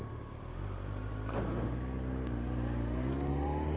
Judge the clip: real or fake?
real